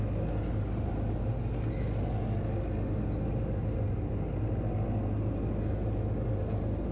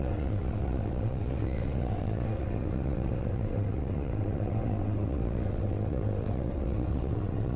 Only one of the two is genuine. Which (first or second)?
first